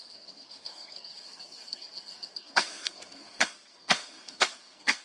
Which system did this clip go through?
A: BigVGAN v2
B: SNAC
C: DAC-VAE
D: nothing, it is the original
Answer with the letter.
B